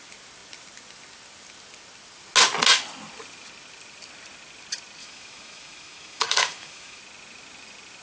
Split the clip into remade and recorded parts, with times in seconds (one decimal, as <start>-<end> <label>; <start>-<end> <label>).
0.0-5.0 recorded; 5.0-7.0 remade; 7.0-8.0 recorded